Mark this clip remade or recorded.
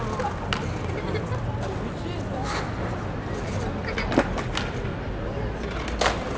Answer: recorded